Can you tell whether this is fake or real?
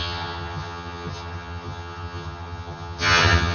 fake